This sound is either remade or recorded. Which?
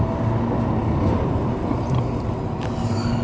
recorded